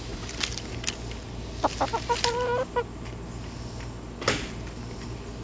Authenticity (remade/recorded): recorded